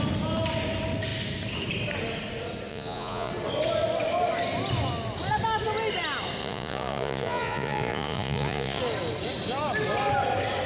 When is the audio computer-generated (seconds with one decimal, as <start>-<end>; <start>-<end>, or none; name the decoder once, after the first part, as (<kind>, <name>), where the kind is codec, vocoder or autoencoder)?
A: 2.7-3.3 (vocoder, Vocos); 6.4-8.8